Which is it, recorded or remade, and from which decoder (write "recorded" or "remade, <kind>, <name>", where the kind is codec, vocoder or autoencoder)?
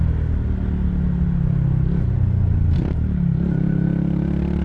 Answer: recorded